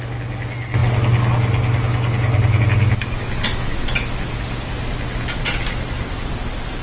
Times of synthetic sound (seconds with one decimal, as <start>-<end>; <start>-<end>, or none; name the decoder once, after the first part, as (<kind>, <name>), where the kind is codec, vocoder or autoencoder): none